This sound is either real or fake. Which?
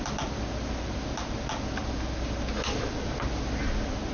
real